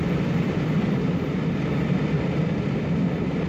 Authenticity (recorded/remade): recorded